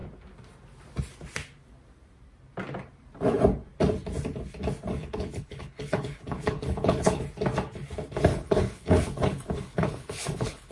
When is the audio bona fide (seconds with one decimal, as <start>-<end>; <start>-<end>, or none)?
0.0-5.0; 7.2-8.3